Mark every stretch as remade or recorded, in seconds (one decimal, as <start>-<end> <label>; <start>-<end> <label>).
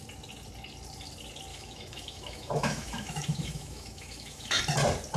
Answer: 0.0-1.5 recorded; 1.5-4.6 remade; 4.6-5.2 recorded